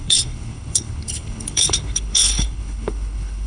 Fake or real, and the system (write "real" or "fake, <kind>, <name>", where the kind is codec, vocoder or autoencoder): fake, codec, HILCodec